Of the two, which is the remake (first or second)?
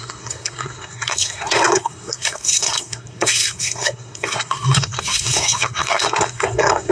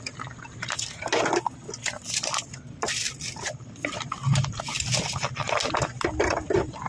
first